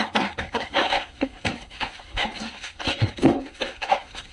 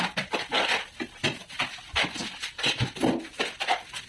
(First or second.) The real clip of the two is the second